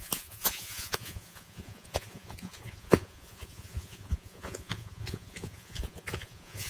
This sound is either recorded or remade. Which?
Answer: remade